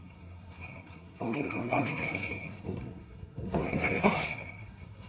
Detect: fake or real fake